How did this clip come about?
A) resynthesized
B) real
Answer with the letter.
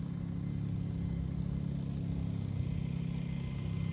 B